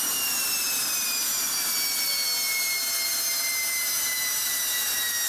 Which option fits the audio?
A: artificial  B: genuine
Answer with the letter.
B